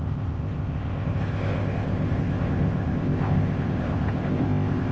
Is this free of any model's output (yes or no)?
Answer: no